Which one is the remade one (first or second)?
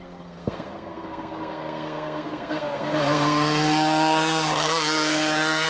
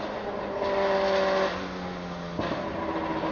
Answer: first